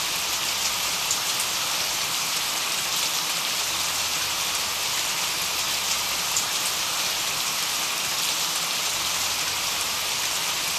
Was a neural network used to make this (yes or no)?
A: no